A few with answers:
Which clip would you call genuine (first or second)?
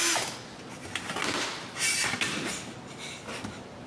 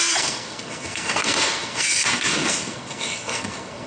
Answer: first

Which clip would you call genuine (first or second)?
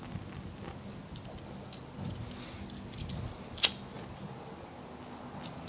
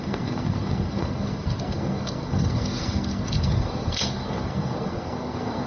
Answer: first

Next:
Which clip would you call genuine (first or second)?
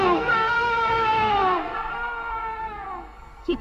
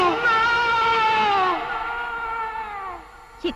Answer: second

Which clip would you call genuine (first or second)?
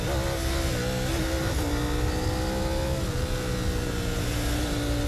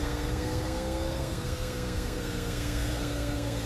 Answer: first